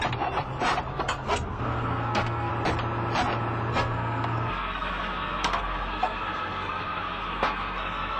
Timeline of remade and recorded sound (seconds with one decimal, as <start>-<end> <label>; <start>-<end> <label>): 0.0-0.9 recorded; 0.9-2.5 remade; 2.5-3.7 recorded; 3.7-8.2 remade